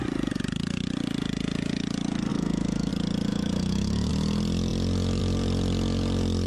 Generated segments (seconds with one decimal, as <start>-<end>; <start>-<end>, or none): 2.3-2.9; 3.3-4.1

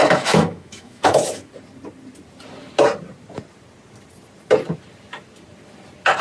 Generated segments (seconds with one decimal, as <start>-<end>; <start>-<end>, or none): 0.0-1.5